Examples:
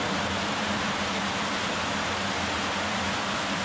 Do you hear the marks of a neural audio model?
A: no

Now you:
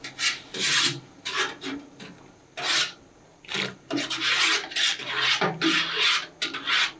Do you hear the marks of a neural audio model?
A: no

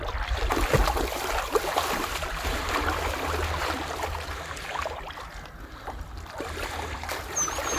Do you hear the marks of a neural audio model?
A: no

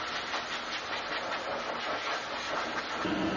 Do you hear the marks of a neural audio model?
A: no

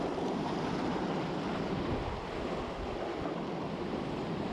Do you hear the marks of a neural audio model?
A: no